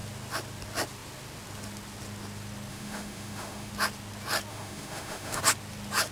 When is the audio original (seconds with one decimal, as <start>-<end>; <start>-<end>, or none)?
0.0-2.7; 3.7-4.5; 5.4-6.1